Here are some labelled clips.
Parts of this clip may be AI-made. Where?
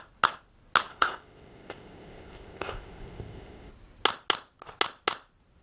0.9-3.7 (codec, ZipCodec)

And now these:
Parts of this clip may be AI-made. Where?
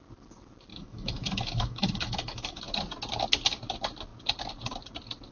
0.7-2.6 (autoencoder, DAC-VAE)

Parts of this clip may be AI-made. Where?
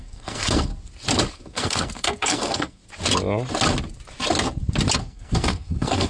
0.0-0.7 (codec, SNAC); 1.3-2.8; 5.0-6.1